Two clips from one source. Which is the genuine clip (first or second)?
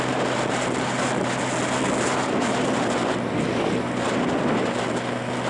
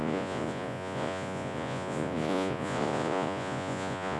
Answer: first